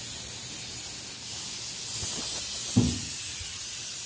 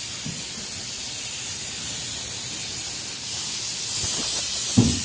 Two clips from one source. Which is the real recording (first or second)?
first